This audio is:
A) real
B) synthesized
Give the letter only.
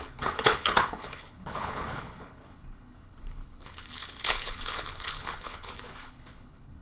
B